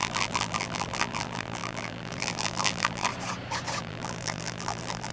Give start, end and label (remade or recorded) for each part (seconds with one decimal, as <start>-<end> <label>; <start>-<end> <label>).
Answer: 0.0-3.1 remade; 3.1-3.8 recorded; 3.8-5.1 remade